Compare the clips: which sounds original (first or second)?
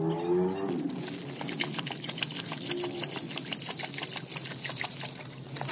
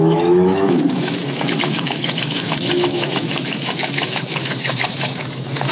first